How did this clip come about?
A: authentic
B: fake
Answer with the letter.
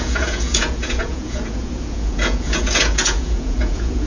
B